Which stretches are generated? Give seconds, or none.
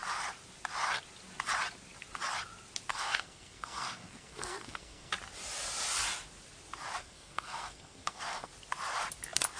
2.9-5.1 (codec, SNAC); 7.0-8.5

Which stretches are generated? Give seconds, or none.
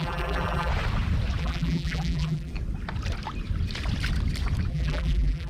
0.0-0.7 (vocoder, BigVGAN v2); 1.4-2.5; 4.7-5.5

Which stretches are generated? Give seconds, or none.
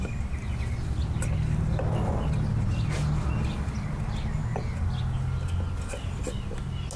none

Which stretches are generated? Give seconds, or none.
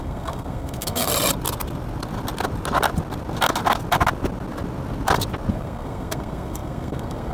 0.0-1.1 (codec, SNAC); 5.5-7.3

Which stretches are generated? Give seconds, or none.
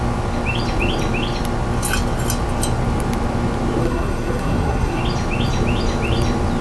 3.8-5.0 (codec, SNAC)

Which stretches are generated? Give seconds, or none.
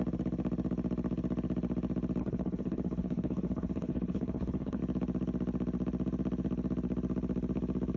2.2-4.8 (codec, HILCodec)